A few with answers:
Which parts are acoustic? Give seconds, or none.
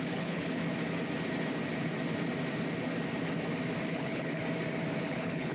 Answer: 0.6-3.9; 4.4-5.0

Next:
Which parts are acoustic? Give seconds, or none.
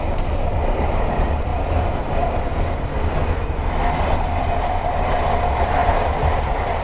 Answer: 1.5-4.5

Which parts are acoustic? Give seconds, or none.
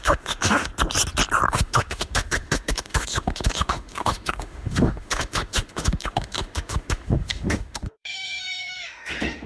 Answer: 0.7-1.5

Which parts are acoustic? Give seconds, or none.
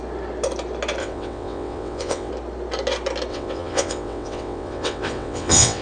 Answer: 0.0-1.0; 2.3-3.3